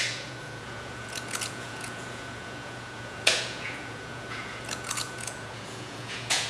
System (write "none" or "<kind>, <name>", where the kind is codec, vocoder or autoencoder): vocoder, Vocos